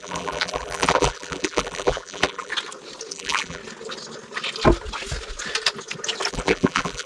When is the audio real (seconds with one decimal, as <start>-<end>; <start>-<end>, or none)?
2.5-3.1; 3.6-6.3